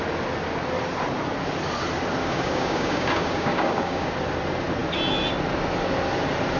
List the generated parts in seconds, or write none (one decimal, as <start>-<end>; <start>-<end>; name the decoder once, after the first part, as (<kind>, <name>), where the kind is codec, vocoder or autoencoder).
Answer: 2.2-4.1 (codec, DAC)